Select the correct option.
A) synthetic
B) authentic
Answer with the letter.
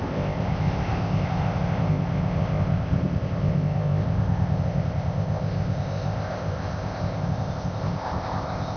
A